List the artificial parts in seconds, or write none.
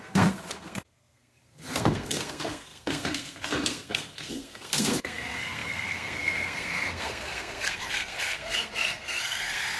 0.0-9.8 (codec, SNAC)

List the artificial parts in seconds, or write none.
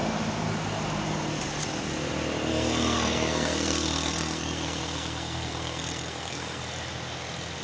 2.5-6.6 (codec, SNAC)